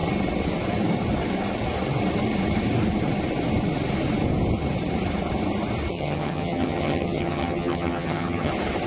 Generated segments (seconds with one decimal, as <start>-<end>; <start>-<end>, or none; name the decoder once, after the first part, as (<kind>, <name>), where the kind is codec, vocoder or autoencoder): 5.9-8.5 (vocoder, HiFi-GAN)